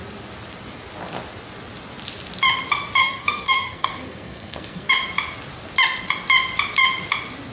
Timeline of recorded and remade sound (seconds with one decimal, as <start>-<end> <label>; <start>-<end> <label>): 0.0-3.0 recorded; 3.0-4.9 remade; 4.9-7.5 recorded